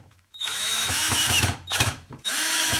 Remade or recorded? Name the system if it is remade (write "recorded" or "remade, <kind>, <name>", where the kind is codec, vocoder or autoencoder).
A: remade, autoencoder, DAC-VAE